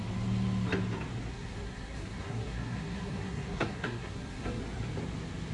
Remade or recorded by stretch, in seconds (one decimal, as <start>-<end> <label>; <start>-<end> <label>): 0.0-1.3 recorded; 1.3-4.6 remade; 4.6-5.5 recorded